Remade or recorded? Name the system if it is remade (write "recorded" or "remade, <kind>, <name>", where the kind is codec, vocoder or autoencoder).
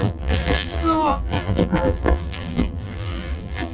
remade, vocoder, BigVGAN v2